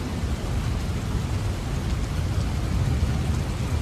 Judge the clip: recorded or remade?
recorded